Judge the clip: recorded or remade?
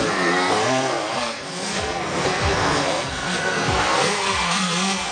remade